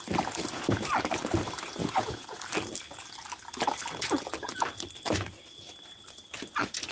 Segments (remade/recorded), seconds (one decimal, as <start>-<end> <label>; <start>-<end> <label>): 0.0-1.8 recorded; 1.8-2.4 remade; 2.4-6.9 recorded